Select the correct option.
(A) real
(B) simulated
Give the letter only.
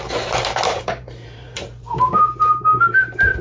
B